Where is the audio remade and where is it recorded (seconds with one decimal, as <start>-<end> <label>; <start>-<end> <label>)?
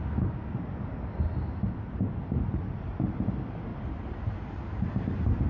0.0-1.4 recorded; 1.4-2.0 remade; 2.0-3.7 recorded; 3.7-4.6 remade; 4.6-5.5 recorded